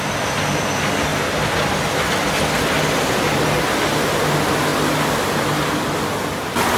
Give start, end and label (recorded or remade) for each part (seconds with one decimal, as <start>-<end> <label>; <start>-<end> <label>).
0.0-6.8 recorded